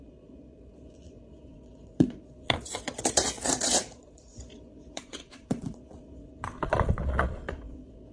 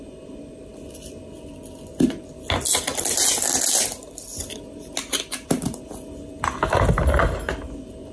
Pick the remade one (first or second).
first